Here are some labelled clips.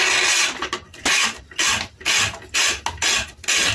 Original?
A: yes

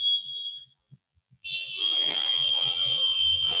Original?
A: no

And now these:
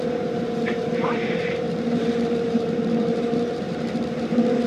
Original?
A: no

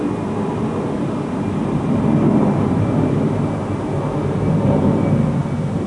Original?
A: yes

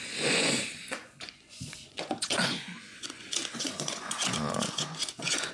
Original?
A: no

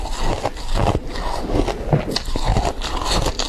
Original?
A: yes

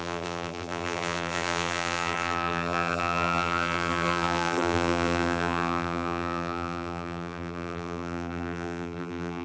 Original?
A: no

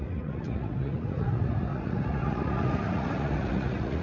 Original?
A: no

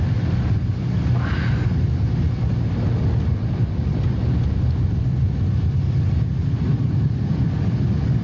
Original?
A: yes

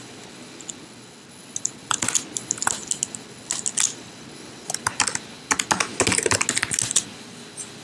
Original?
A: yes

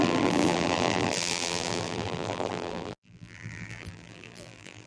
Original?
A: no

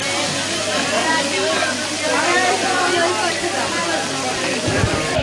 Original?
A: yes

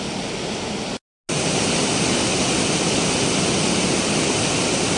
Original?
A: yes